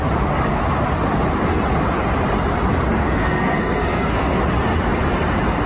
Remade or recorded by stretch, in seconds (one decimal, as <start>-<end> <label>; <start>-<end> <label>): 0.0-3.2 recorded; 3.2-4.4 remade; 4.4-5.7 recorded